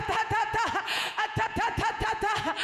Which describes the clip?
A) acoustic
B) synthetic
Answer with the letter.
B